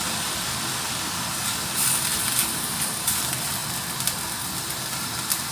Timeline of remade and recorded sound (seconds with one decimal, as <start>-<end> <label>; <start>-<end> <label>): 0.0-5.5 recorded